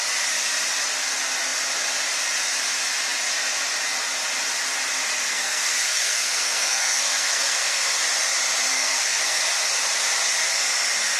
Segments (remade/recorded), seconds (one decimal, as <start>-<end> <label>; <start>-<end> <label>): 0.0-5.3 recorded; 5.3-8.0 remade; 8.0-8.7 recorded; 8.7-9.4 remade; 9.4-11.2 recorded